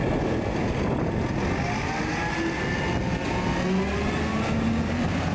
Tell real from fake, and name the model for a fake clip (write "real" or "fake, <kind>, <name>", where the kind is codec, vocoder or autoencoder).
real